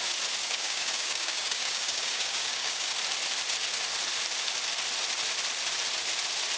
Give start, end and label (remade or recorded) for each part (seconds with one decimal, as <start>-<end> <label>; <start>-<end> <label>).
0.0-0.4 recorded; 0.4-2.9 remade; 2.9-6.6 recorded